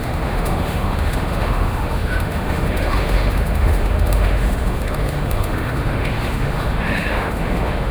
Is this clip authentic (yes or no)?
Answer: no